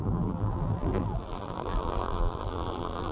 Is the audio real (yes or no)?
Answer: no